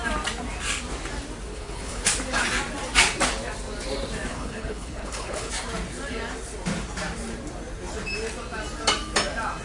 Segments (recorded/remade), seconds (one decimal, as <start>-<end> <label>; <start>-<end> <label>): 0.0-1.5 recorded; 1.5-2.0 remade; 2.0-4.3 recorded; 4.3-5.5 remade; 5.5-9.6 recorded